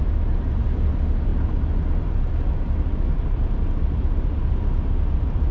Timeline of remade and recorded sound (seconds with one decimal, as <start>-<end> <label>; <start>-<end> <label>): 0.0-5.5 recorded